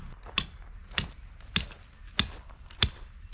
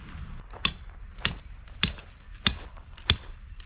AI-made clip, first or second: second